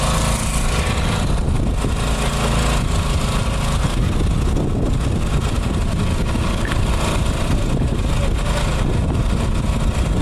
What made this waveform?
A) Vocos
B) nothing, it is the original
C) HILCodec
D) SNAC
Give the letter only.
B